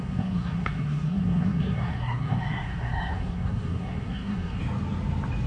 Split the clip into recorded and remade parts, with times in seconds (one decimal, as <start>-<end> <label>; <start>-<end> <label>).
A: 0.0-4.6 remade; 4.6-5.5 recorded